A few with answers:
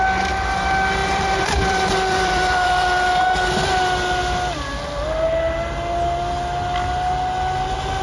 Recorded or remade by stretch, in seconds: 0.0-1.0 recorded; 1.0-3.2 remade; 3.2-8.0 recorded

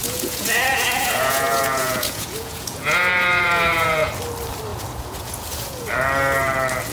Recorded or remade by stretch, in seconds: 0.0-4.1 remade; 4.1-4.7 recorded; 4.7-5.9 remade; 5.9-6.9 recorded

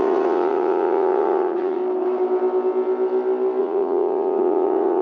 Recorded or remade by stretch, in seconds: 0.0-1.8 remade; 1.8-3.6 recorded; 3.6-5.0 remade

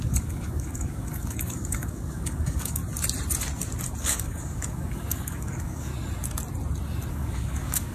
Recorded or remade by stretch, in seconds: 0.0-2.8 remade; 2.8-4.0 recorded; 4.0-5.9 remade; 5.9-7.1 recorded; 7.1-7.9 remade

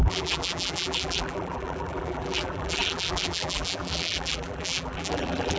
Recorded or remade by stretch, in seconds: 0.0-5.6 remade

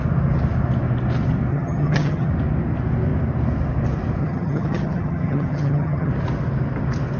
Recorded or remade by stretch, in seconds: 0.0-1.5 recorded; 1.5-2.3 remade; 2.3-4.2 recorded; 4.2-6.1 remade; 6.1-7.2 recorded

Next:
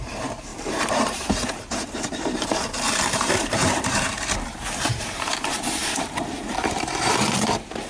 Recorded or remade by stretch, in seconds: 0.0-7.9 remade

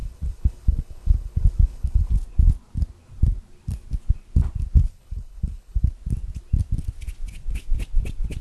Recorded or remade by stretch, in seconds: 0.0-2.1 remade; 2.1-4.8 recorded; 4.8-5.9 remade; 5.9-8.4 recorded